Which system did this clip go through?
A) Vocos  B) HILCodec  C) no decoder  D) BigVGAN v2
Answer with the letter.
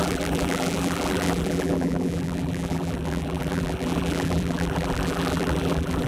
D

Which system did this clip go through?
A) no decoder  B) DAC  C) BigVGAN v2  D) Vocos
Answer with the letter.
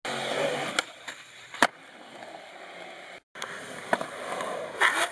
A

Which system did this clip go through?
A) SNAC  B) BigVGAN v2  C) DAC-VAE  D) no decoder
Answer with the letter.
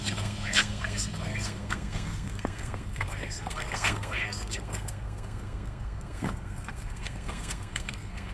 A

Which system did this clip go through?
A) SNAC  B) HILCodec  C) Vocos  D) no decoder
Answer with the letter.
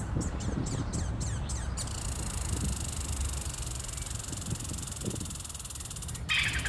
D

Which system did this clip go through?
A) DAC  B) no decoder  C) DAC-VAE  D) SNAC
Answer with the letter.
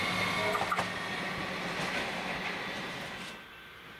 B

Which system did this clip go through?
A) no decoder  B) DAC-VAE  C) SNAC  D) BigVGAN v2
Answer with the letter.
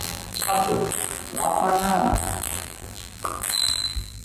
D